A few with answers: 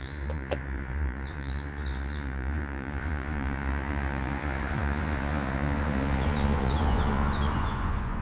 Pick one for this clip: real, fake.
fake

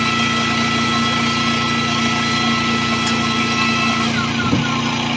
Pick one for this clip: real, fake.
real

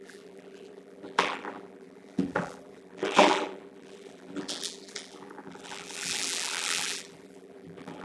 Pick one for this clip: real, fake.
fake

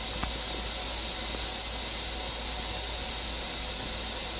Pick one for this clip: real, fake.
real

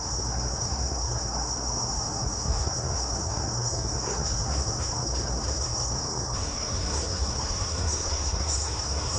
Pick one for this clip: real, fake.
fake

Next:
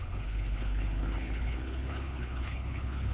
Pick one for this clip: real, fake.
fake